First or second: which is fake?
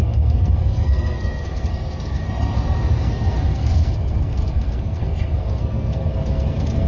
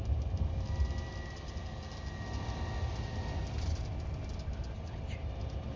first